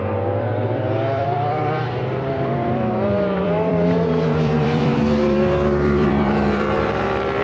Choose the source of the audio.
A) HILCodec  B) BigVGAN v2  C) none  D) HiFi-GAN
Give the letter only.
B